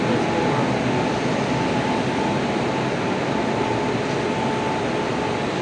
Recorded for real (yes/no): yes